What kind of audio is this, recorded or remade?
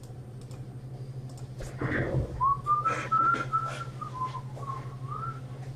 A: recorded